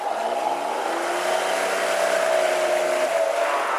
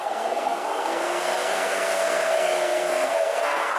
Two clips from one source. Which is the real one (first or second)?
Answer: first